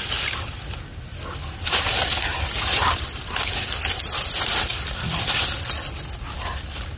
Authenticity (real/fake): real